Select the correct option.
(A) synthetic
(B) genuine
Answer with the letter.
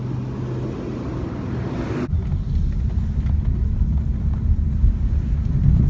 B